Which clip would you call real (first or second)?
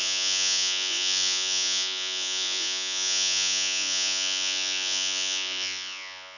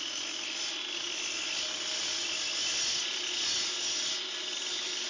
second